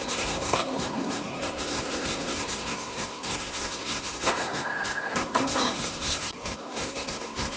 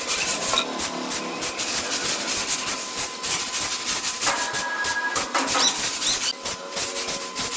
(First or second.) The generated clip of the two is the first